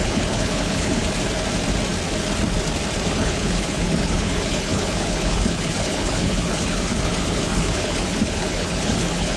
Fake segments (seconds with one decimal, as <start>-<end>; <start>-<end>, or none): 0.0-1.0; 3.1-9.4